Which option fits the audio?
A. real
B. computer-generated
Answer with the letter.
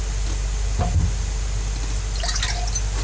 A